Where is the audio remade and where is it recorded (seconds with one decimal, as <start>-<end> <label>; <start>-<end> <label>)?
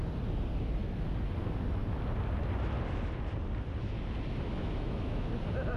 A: 0.0-4.6 recorded; 4.6-5.3 remade; 5.3-5.8 recorded